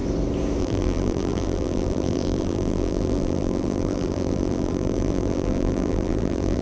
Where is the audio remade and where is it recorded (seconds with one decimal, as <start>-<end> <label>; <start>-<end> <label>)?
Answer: 0.0-0.6 recorded; 0.6-6.6 remade